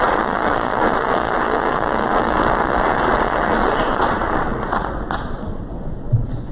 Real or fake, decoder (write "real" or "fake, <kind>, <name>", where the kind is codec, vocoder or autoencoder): fake, vocoder, Vocos